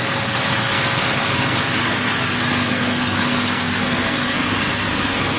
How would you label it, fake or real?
fake